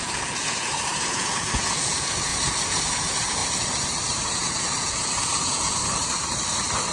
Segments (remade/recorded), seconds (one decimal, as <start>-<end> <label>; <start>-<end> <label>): 0.0-3.4 remade; 3.4-4.3 recorded; 4.3-5.8 remade; 5.8-6.9 recorded